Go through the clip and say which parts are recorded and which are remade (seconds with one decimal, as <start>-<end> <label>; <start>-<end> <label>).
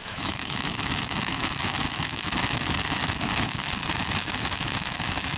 0.0-5.4 remade